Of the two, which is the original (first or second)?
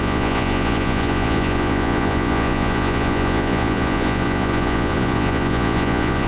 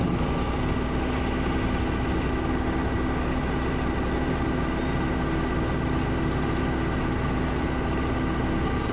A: second